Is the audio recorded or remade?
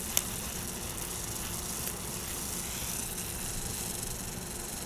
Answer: recorded